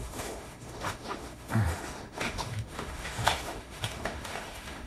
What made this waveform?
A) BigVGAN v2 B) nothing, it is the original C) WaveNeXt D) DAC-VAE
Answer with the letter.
D